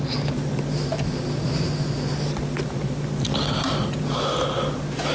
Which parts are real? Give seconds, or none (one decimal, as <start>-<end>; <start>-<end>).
0.0-5.1